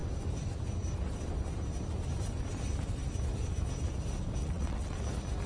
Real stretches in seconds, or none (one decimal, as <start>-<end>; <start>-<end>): 0.0-4.4; 5.0-5.5

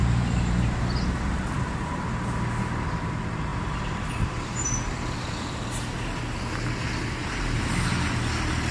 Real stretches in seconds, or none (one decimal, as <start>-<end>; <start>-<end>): 1.6-3.5; 6.2-7.2; 7.7-8.7

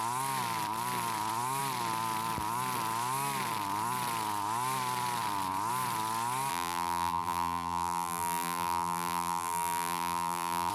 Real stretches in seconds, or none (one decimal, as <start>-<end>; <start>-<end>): 0.0-6.5

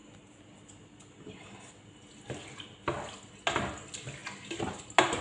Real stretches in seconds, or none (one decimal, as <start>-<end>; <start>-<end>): 0.0-5.2

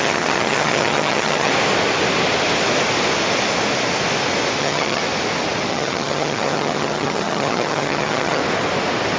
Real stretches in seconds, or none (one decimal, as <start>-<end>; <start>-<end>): 1.5-4.6; 5.0-5.7; 8.4-9.2

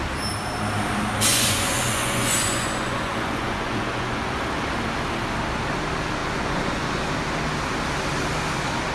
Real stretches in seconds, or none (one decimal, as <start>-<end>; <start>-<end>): 0.0-1.3; 4.4-6.2; 7.0-8.9